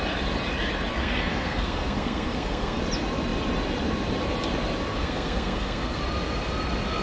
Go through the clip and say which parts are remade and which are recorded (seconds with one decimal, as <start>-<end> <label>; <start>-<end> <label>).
0.0-1.0 recorded; 1.0-2.8 remade; 2.8-4.9 recorded; 4.9-6.0 remade; 6.0-7.0 recorded